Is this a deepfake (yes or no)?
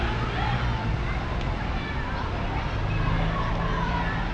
no